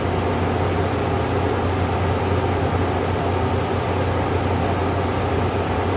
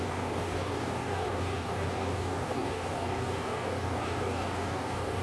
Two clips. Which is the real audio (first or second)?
first